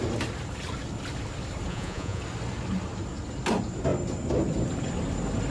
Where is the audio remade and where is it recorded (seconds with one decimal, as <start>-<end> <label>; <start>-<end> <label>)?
0.0-1.7 recorded; 1.7-2.2 remade; 2.2-5.5 recorded